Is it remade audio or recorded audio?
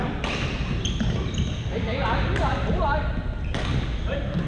recorded